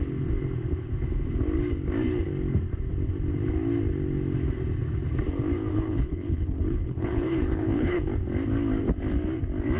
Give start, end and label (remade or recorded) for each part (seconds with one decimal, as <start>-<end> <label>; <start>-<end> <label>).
0.0-5.7 recorded; 5.7-8.0 remade; 8.0-9.8 recorded